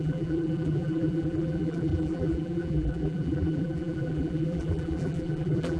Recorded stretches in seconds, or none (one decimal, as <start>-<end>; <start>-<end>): none

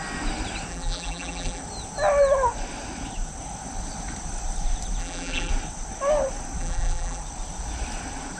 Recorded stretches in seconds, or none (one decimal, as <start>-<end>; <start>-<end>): 0.0-0.7; 1.6-5.0; 5.5-6.6; 7.2-8.4

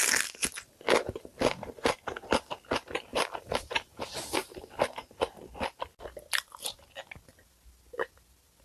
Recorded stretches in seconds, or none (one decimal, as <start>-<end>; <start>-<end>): 0.0-3.1; 4.0-8.6

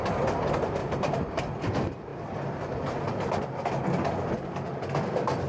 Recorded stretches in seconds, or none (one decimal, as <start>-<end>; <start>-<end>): 0.0-0.8; 1.4-5.5

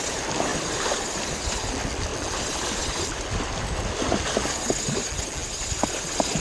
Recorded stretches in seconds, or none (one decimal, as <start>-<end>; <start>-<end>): 0.0-6.4

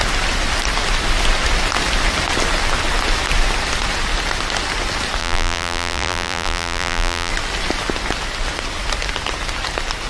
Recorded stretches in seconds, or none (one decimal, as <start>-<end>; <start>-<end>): 0.0-5.2; 7.3-10.1

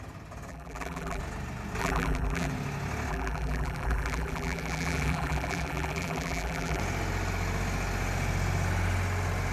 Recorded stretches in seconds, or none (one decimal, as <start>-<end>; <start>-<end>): 0.0-0.5; 1.2-1.8; 2.5-3.1; 6.8-9.5